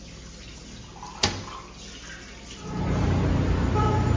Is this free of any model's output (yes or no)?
yes